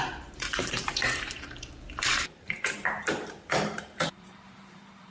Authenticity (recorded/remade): remade